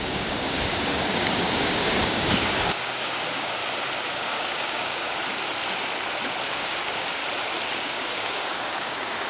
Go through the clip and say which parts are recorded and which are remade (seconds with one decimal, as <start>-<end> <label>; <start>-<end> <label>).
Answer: 0.0-3.6 remade; 3.6-4.1 recorded; 4.1-5.2 remade; 5.2-6.5 recorded; 6.5-7.2 remade; 7.2-7.8 recorded; 7.8-9.3 remade